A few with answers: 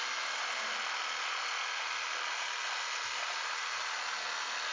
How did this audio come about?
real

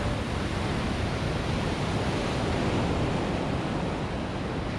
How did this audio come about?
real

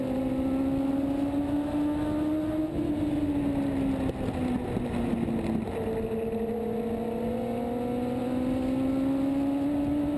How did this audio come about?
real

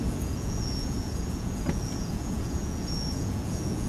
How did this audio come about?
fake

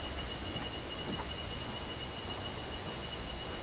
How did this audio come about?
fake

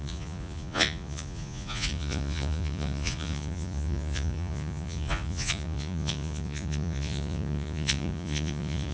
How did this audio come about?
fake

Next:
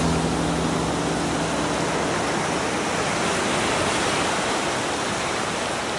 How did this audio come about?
real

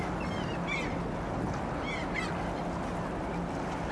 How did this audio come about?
real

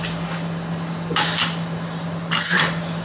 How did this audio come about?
real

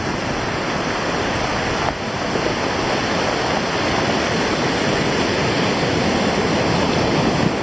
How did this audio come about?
real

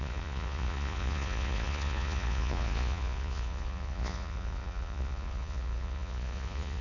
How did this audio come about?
fake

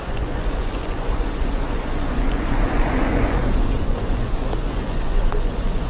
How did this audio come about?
fake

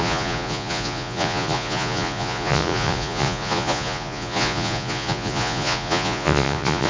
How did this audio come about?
fake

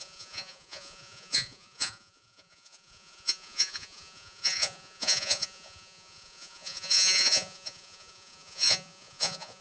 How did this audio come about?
fake